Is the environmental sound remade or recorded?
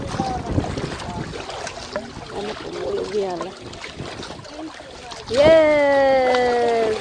recorded